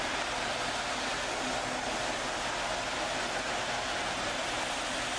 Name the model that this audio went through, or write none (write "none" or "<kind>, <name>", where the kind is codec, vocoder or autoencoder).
none